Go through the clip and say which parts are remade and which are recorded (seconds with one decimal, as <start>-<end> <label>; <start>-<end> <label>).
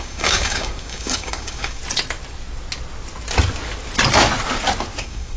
0.0-1.8 remade; 1.8-5.0 recorded; 5.0-5.4 remade